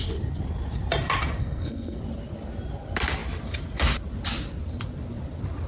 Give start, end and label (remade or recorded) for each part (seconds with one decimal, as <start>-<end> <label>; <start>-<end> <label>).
0.0-1.4 recorded; 1.4-2.0 remade; 2.0-5.7 recorded